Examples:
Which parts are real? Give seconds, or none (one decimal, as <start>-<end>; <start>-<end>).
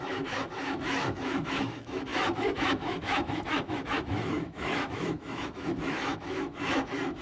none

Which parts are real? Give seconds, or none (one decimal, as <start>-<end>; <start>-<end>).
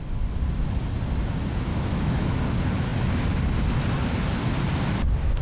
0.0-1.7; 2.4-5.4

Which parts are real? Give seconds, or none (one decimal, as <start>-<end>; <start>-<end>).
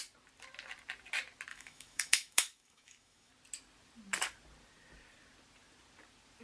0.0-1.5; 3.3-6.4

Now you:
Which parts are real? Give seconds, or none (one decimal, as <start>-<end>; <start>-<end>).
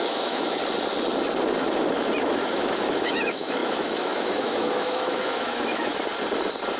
0.6-2.2; 5.9-6.8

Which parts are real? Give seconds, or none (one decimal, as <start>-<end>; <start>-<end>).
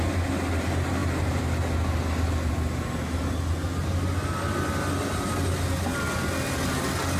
0.0-7.2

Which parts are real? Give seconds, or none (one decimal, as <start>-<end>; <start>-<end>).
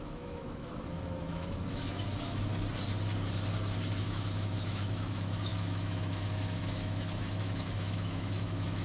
2.5-4.0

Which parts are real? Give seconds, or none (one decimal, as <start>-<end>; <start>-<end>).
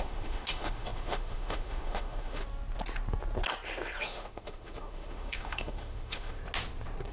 2.4-4.0; 6.4-7.1